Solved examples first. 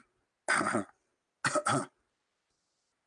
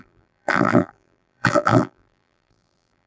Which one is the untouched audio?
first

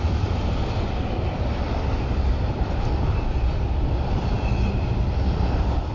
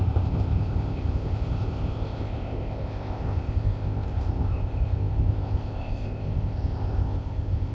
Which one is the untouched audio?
first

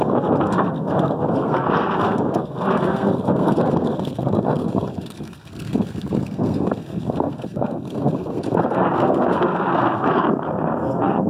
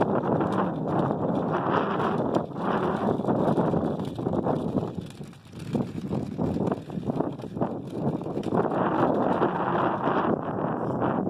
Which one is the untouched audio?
second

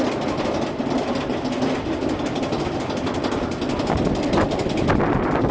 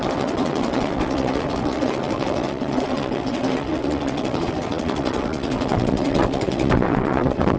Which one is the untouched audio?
first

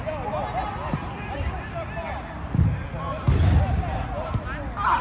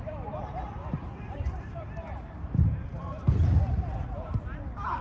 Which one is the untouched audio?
first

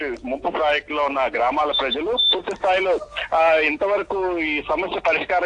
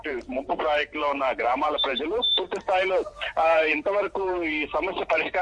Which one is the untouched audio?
first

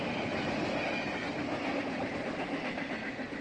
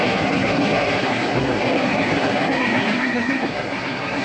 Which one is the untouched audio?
first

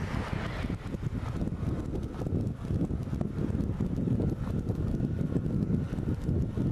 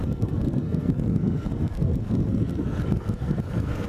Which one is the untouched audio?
first